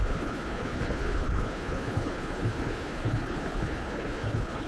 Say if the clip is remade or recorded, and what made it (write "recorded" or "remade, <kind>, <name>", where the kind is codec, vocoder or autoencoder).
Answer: remade, codec, HILCodec